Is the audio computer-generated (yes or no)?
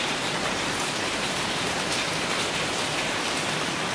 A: no